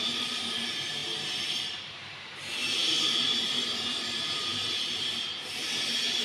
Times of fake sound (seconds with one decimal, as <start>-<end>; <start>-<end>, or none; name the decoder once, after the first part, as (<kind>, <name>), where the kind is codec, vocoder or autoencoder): 0.0-1.0 (vocoder, BigVGAN v2); 1.6-6.2